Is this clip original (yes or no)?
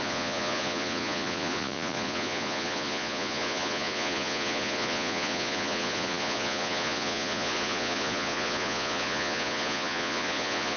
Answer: no